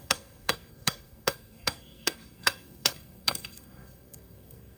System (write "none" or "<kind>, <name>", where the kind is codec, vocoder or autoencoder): codec, SNAC